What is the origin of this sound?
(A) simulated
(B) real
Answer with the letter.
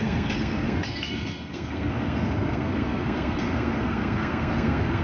A